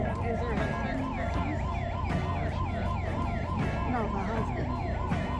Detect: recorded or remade recorded